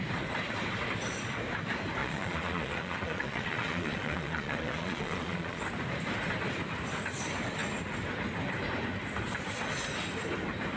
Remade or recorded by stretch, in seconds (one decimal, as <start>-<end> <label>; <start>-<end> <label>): 0.0-2.0 recorded; 2.0-5.6 remade; 5.6-10.8 recorded